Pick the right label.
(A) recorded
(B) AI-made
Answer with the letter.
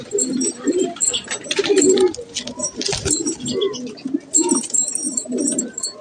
B